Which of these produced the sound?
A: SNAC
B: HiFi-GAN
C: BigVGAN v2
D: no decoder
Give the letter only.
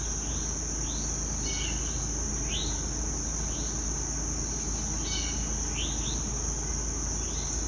D